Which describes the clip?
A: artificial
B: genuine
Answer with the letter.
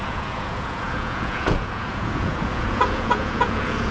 A